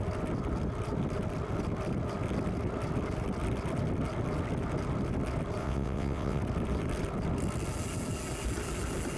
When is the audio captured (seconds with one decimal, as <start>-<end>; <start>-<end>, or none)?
0.0-5.6; 6.4-9.2